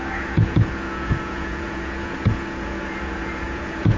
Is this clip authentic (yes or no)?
no